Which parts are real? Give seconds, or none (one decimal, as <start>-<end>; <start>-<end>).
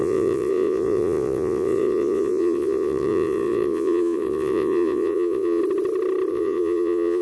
5.6-6.3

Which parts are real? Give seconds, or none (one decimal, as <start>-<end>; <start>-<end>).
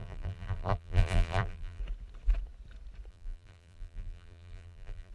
1.8-3.1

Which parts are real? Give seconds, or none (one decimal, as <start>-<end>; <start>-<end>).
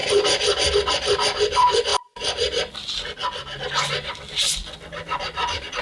0.7-5.8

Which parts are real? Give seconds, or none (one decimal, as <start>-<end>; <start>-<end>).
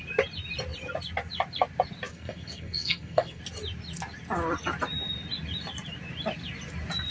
0.0-2.1; 3.4-7.1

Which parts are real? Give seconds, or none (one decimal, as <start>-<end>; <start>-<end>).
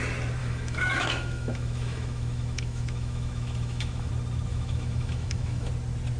0.0-0.4; 4.1-4.5; 5.7-6.2